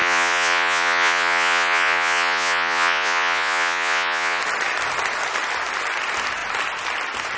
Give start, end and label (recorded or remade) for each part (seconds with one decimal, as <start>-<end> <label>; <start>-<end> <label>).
0.0-4.4 remade; 4.4-7.4 recorded